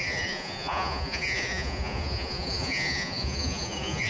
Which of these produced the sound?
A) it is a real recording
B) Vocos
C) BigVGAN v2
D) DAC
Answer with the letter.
B